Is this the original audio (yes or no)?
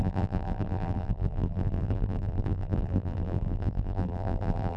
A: no